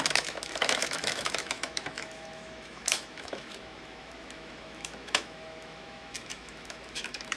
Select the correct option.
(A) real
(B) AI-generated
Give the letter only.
B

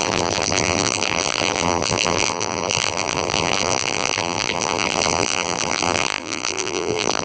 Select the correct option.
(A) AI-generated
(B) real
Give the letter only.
A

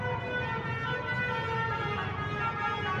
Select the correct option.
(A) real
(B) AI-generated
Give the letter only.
A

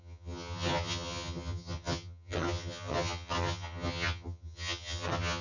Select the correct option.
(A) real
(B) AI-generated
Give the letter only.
B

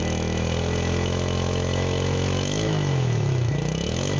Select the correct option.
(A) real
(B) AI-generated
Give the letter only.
B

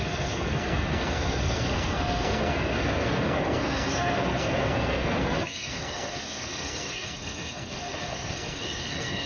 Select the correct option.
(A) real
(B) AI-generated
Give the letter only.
B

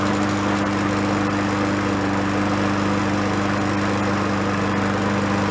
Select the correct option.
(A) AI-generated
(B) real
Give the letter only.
B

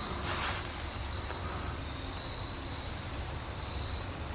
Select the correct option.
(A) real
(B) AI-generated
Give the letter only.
A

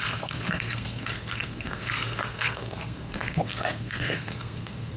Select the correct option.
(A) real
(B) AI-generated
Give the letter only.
B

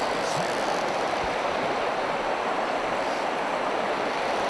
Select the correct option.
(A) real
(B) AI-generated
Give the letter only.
B